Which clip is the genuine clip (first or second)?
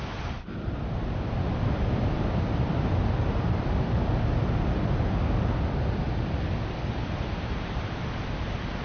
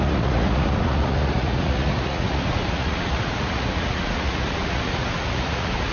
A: first